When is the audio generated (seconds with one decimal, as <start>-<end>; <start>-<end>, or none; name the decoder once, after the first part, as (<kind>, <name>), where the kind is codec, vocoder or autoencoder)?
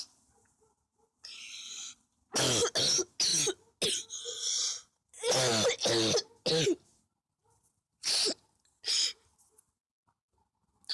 none